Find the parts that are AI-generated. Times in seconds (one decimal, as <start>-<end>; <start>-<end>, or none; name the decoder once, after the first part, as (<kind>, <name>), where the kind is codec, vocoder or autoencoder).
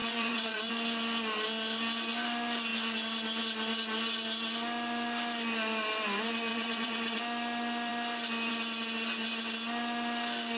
0.0-0.7 (vocoder, WaveNeXt); 6.5-7.2